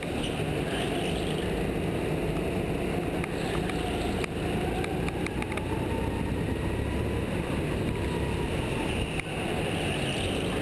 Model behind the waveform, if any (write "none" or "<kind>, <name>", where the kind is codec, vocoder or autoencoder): none